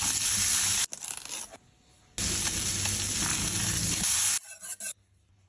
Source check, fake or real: real